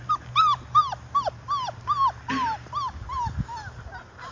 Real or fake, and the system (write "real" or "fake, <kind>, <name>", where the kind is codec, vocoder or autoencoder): real